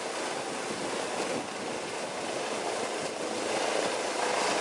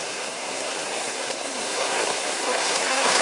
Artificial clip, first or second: second